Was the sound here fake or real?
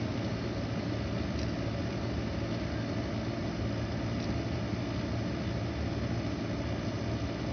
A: real